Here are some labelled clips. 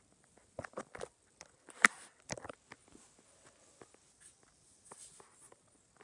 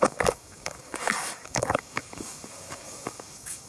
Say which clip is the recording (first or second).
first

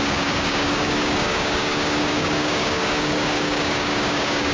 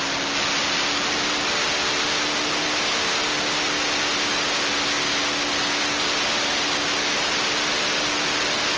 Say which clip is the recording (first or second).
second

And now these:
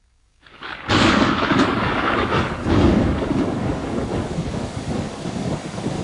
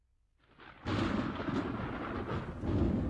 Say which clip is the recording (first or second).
second